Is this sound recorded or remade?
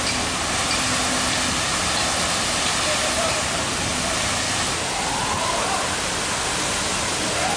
recorded